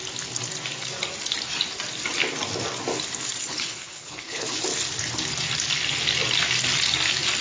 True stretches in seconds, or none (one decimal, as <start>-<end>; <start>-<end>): 0.0-3.4; 4.6-7.4